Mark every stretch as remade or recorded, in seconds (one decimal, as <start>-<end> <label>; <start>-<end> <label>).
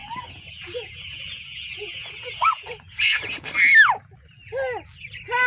0.0-3.3 remade; 3.3-5.5 recorded